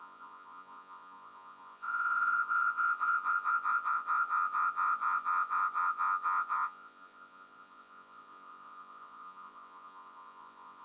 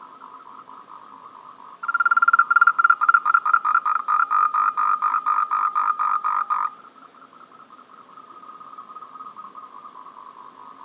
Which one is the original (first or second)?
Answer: second